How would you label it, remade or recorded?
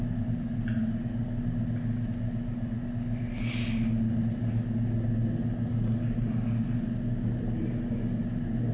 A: recorded